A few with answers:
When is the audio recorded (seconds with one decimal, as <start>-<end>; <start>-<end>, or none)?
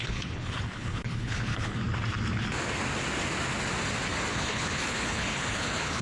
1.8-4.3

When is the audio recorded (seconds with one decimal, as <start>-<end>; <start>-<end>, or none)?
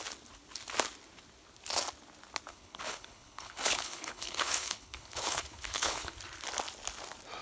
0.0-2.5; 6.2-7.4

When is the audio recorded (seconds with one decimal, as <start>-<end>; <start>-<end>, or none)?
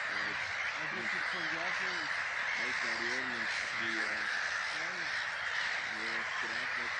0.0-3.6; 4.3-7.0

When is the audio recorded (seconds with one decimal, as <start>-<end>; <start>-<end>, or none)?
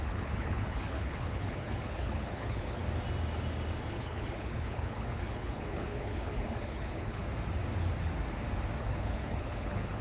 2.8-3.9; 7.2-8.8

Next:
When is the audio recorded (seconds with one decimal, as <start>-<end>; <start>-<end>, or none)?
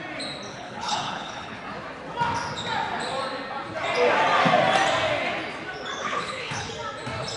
0.0-0.5; 1.6-6.0; 6.7-7.4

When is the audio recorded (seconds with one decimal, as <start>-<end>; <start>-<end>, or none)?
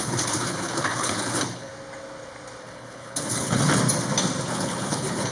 1.7-2.6; 3.7-4.5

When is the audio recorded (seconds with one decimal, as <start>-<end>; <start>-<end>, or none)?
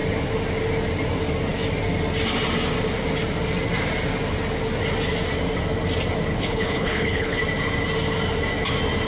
0.0-6.3; 7.4-9.1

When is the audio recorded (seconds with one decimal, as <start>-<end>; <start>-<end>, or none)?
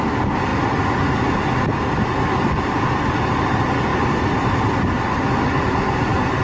0.0-6.4